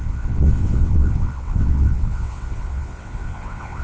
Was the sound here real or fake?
fake